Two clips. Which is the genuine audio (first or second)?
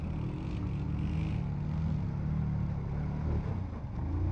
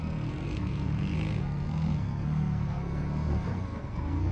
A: first